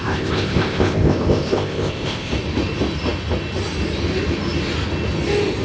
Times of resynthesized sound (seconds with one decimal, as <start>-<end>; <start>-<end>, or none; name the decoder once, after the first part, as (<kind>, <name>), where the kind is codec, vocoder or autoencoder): 0.0-2.3 (codec, ZipCodec)